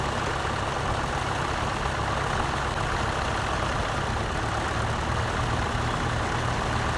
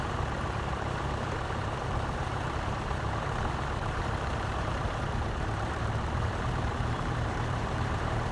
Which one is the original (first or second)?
first